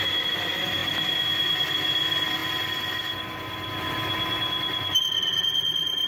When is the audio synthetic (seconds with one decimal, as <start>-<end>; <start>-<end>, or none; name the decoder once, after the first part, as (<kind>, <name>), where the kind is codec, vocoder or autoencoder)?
none